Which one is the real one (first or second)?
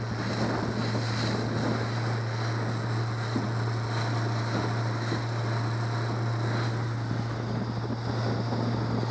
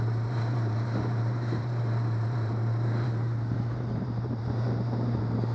first